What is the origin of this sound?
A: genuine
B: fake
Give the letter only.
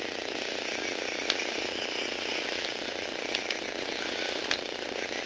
A